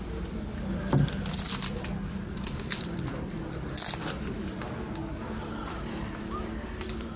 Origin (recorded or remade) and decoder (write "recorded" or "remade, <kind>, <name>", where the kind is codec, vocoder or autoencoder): remade, vocoder, BigVGAN v2